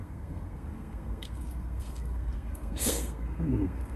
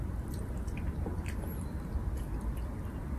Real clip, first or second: second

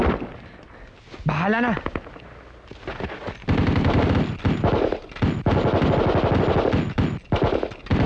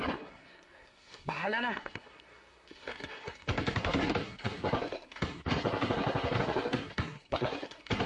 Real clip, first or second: first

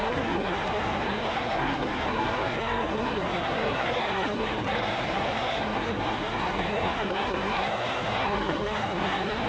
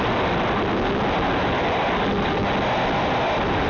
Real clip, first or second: second